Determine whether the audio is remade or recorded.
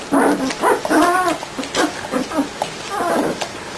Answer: recorded